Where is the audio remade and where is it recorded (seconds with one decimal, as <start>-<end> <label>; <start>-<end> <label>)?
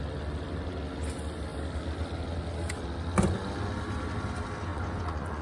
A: 0.0-4.7 recorded; 4.7-5.4 remade